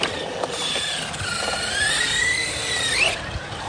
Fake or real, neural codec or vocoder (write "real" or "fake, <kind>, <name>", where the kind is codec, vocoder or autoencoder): real